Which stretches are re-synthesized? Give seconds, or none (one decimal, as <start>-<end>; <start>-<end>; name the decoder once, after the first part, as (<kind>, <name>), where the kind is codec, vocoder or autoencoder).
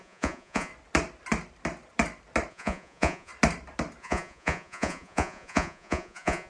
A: 0.0-0.7 (vocoder, Vocos); 2.5-3.3; 4.0-6.5